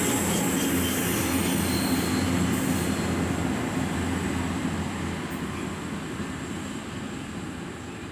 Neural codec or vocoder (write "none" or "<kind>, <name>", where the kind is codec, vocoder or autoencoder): none